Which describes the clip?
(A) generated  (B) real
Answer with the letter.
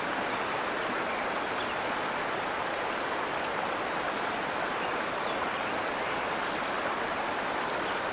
B